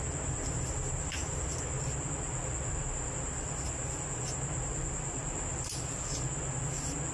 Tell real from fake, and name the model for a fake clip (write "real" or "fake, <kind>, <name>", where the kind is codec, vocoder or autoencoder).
real